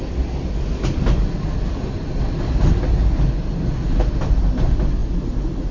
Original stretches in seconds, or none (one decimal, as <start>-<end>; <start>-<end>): 0.0-5.7